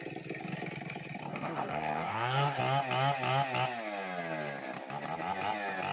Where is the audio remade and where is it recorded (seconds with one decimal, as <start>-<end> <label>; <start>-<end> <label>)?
0.0-1.3 recorded; 1.3-2.6 remade; 2.6-5.9 recorded